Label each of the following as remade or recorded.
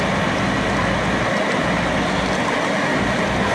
recorded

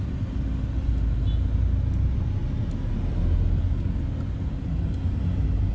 recorded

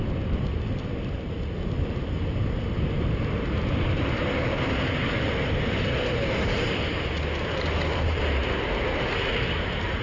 recorded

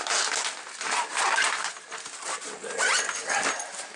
recorded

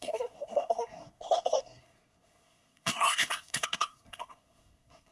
remade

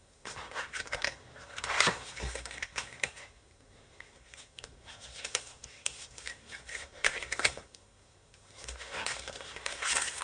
remade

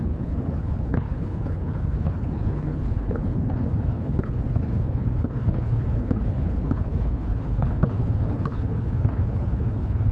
remade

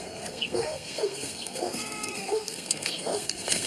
remade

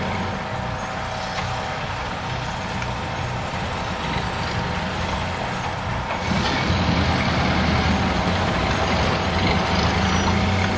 recorded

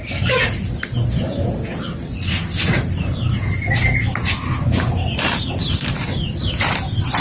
recorded